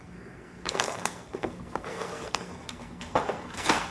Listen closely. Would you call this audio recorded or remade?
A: remade